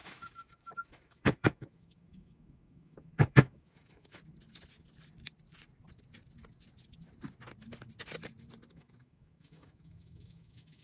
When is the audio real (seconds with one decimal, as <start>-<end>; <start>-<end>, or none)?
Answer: 4.2-8.7